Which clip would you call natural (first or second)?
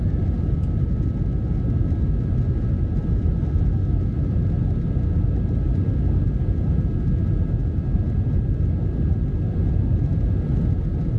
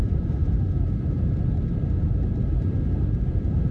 first